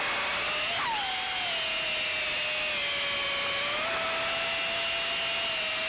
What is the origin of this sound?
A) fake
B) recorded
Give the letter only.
B